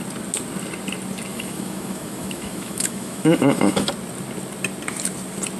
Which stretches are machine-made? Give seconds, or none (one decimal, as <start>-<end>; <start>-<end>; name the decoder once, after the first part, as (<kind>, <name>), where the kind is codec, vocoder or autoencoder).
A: 1.3-3.9 (autoencoder, DAC-VAE)